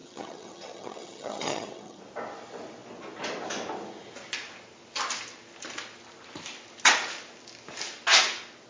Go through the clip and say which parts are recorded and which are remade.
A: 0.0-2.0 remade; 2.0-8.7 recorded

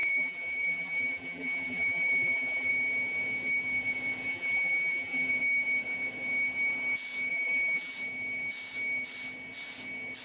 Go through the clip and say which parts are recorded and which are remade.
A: 0.0-2.7 remade; 2.7-4.3 recorded; 4.3-5.3 remade; 5.3-7.3 recorded; 7.3-7.9 remade; 7.9-10.2 recorded